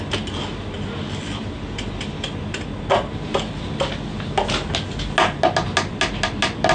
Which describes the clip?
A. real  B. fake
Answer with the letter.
A